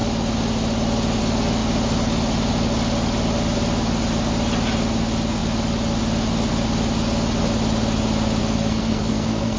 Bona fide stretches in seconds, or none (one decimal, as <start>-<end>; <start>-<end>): 0.0-8.4